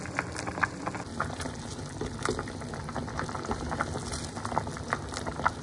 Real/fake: real